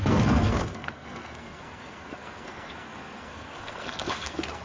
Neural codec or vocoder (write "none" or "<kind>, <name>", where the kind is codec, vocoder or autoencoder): codec, SNAC